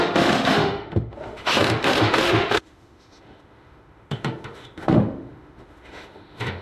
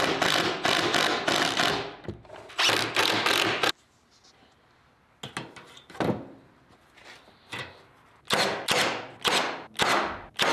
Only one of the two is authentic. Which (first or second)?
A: second